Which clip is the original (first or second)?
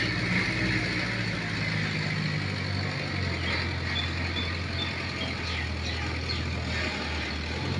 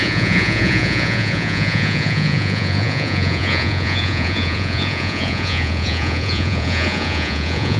first